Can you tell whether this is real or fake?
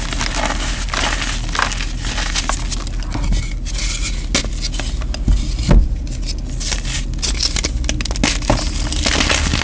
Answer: real